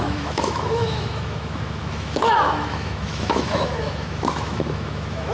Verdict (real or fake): fake